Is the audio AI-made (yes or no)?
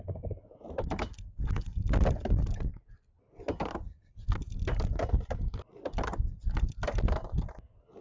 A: no